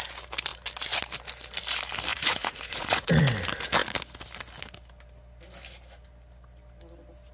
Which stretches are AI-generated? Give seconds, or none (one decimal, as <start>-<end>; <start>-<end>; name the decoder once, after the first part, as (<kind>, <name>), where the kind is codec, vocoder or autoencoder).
2.1-3.2 (vocoder, Vocos)